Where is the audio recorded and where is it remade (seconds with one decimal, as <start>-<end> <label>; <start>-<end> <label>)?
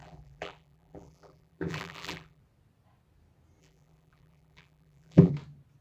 0.0-2.4 remade; 2.4-3.6 recorded; 3.6-5.3 remade; 5.3-5.8 recorded